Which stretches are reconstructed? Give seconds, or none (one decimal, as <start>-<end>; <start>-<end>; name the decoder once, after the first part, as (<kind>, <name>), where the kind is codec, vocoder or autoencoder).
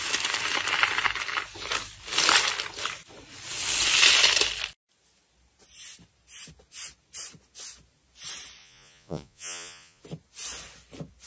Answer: 8.6-10.0 (vocoder, Vocos)